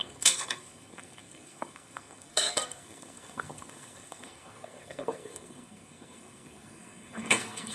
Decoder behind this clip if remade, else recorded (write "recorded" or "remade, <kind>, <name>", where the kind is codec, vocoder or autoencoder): remade, codec, SNAC